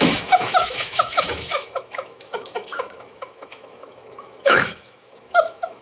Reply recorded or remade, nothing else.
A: remade